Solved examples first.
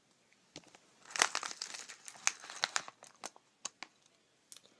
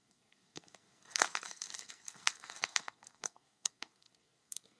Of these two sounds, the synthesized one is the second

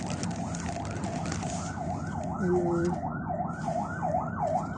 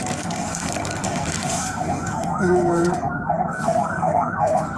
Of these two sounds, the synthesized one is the second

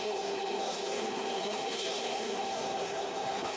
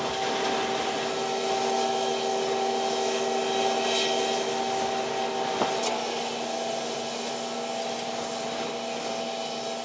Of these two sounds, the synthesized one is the first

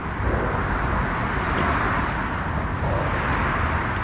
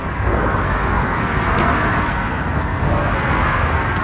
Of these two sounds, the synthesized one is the second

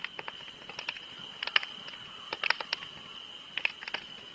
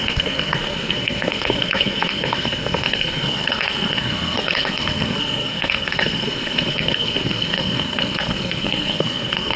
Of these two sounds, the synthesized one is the second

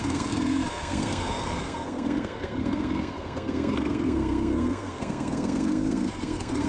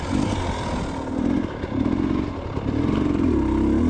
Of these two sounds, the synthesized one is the first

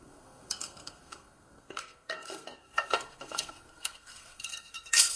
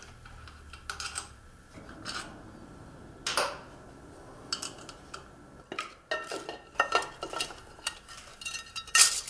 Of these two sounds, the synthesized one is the first